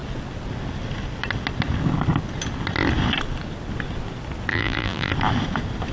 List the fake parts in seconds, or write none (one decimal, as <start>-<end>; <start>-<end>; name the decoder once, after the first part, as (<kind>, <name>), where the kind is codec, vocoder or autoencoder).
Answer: 4.5-5.1 (vocoder, BigVGAN v2)